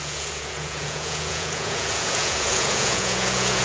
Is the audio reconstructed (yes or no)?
yes